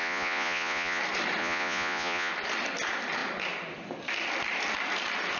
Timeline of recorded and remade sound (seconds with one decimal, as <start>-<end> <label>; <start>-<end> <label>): 0.0-1.0 remade; 1.0-1.4 recorded; 1.4-2.3 remade; 2.3-5.4 recorded